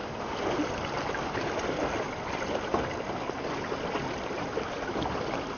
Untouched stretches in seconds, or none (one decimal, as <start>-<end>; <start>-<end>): 0.0-5.6